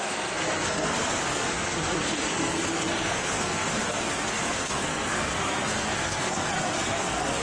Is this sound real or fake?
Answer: fake